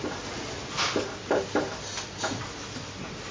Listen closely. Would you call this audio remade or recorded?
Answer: recorded